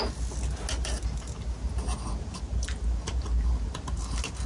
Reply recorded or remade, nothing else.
recorded